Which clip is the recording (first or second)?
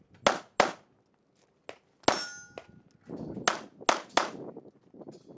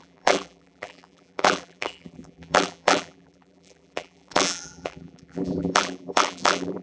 first